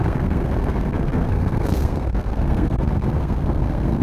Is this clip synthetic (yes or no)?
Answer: yes